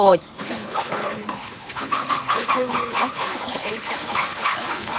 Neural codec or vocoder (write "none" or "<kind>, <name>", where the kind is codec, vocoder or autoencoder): codec, HILCodec